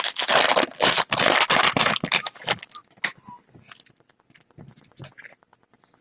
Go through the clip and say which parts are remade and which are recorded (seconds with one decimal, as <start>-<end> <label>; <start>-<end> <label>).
0.0-6.0 recorded